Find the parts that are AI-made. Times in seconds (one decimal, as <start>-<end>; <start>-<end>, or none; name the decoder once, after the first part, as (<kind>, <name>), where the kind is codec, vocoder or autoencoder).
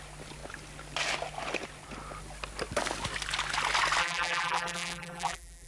4.0-5.7 (vocoder, BigVGAN v2)